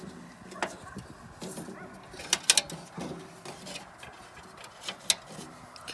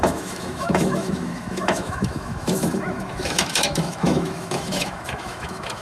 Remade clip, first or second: second